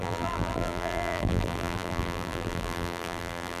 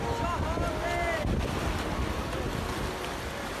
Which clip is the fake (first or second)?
first